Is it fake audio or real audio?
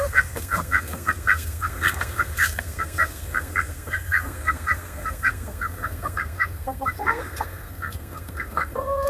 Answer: fake